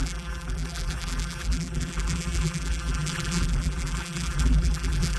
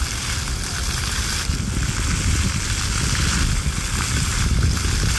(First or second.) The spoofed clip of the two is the first